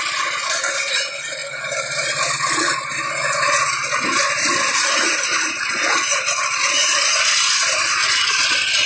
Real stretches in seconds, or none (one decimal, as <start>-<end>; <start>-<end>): 0.0-8.9